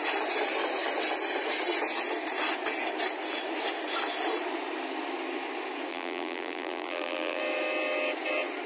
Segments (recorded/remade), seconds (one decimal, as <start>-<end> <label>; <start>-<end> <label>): 0.0-5.9 recorded; 5.9-7.4 remade; 7.4-8.7 recorded